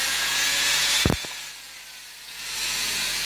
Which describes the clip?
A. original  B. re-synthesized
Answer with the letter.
B